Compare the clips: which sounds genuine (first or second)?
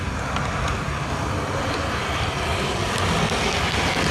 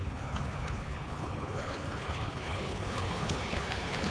first